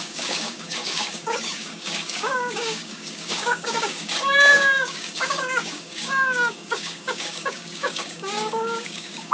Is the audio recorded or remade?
remade